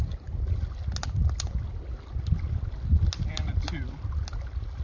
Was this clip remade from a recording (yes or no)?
no